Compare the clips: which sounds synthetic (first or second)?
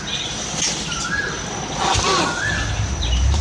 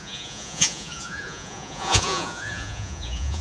second